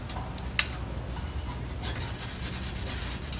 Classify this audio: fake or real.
real